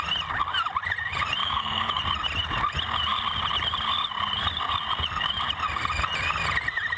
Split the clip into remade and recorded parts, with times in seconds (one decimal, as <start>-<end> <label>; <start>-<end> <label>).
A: 0.0-1.4 recorded; 1.4-2.0 remade; 2.0-7.0 recorded